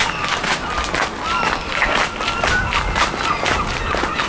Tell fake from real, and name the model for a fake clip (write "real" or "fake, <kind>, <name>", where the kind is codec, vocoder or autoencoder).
real